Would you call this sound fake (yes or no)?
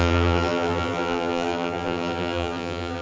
yes